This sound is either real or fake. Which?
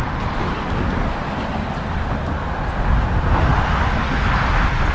real